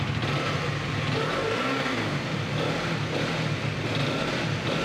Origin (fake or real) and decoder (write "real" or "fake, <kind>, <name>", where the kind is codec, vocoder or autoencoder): real